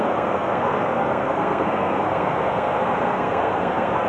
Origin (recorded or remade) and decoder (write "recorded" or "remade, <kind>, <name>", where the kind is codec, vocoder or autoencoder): remade, codec, SNAC